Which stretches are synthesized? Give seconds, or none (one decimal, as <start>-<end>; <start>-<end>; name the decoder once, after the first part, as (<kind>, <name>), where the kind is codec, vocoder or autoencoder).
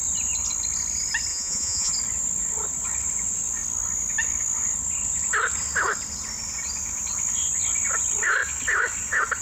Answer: 1.3-1.9 (vocoder, Vocos)